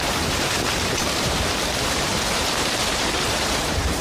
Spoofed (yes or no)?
yes